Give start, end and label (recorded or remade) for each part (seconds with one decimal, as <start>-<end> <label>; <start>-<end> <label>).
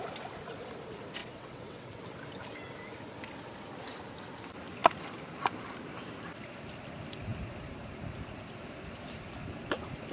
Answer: 0.0-1.2 recorded; 1.2-2.0 remade; 2.0-10.1 recorded